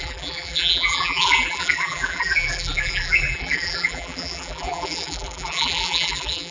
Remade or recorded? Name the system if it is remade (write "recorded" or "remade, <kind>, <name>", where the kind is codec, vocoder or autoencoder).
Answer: remade, vocoder, BigVGAN v2